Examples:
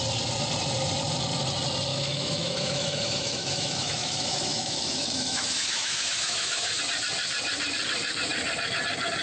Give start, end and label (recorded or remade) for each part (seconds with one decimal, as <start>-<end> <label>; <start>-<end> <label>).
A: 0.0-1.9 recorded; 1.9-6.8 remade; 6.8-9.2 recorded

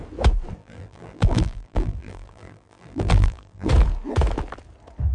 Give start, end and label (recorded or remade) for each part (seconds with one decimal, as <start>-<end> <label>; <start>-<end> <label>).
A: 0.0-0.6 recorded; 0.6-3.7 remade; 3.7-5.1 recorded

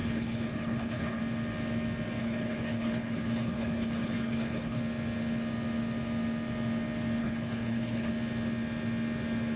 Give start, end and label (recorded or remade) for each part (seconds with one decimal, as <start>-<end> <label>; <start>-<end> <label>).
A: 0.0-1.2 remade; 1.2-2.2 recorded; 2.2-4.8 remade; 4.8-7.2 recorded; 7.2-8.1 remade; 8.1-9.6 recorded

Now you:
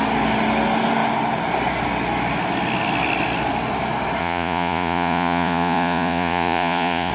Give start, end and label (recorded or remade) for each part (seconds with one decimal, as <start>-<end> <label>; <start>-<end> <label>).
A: 0.0-4.2 recorded; 4.2-7.1 remade

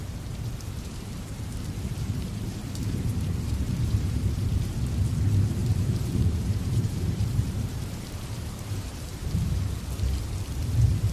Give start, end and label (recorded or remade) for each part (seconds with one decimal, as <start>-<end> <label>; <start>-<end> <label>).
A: 0.0-4.7 remade; 4.7-5.6 recorded; 5.6-9.6 remade; 9.6-11.1 recorded

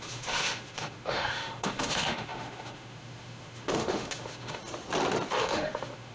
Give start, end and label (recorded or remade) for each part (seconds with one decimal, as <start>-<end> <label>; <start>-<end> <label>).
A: 0.0-4.6 remade; 4.6-5.4 recorded; 5.4-6.1 remade